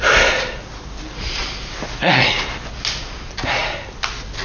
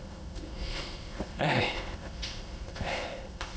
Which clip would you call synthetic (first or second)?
second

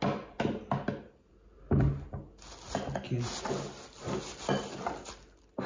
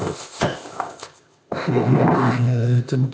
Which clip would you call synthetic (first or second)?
second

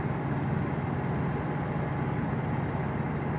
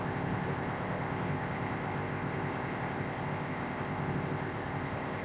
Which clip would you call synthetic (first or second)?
second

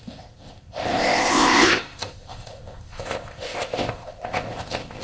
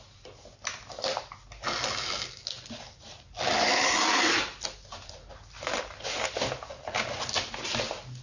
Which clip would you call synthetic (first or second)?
first